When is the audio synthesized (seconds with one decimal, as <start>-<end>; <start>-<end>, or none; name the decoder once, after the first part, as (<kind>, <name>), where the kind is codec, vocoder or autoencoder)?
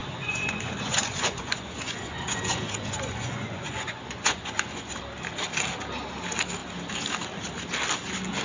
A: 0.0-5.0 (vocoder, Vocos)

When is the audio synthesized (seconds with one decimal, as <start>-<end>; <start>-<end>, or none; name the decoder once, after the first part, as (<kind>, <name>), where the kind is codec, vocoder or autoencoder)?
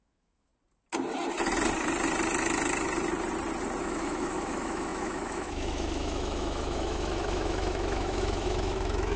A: 0.0-0.5 (autoencoder, DAC-VAE); 3.8-9.2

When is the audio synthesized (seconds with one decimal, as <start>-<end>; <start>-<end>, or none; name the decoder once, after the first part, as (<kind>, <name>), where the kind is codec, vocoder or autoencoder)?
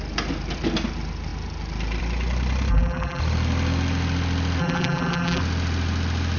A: 2.7-3.2 (vocoder, BigVGAN v2); 4.6-5.4